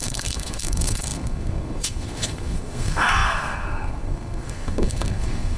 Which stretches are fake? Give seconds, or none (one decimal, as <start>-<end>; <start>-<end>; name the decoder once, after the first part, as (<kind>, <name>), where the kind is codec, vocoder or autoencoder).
0.0-5.6 (codec, SNAC)